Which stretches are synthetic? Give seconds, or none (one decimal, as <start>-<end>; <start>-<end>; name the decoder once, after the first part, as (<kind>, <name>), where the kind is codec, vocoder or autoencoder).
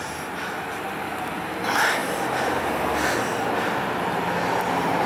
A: none